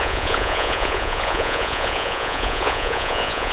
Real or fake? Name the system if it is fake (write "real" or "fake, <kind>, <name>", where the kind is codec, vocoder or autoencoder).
fake, vocoder, Vocos